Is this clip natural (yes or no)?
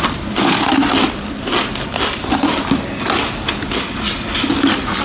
yes